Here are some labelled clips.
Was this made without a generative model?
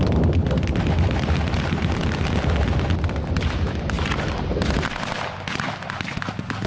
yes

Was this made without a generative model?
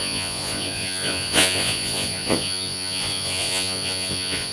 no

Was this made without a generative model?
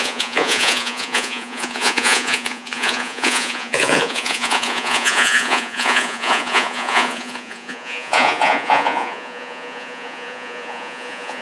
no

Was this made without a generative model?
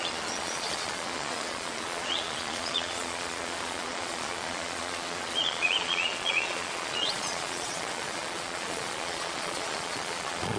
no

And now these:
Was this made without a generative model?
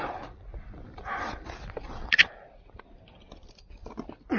yes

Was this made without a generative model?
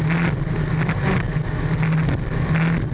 yes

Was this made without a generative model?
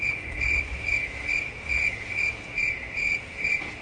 no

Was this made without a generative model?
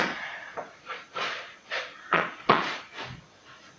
no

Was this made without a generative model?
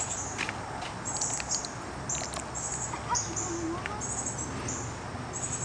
yes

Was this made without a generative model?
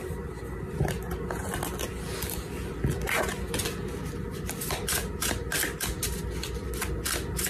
yes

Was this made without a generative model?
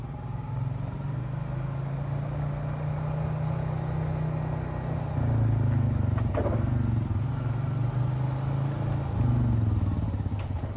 yes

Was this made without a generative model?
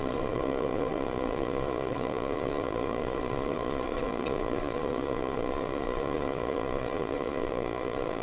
no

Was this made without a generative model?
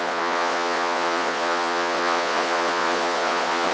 no